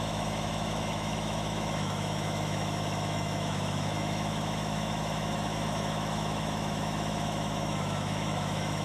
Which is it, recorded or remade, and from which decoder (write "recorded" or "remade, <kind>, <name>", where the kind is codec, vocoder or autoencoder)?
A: remade, autoencoder, DAC-VAE